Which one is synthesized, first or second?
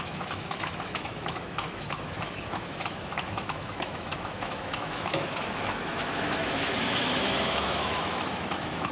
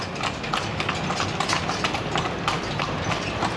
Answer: first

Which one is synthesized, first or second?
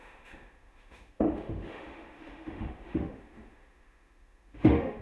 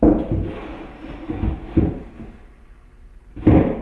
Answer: first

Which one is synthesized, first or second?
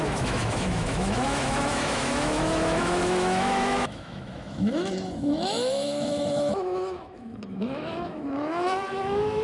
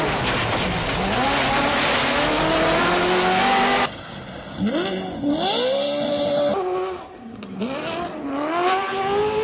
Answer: first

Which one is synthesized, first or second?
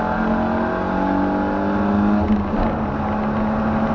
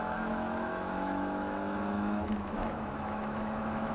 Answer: second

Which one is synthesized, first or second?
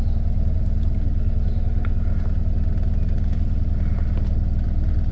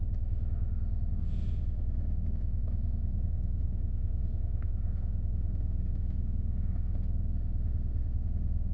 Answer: second